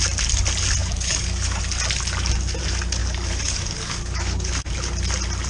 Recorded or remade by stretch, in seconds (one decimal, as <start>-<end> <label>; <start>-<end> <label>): 0.0-0.8 recorded; 0.8-1.6 remade; 1.6-3.0 recorded; 3.0-4.5 remade; 4.5-5.5 recorded